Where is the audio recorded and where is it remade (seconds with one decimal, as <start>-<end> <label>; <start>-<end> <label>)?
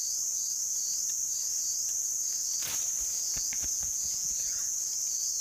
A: 0.0-3.1 recorded; 3.1-4.7 remade; 4.7-5.4 recorded